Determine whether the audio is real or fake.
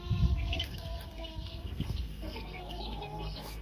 fake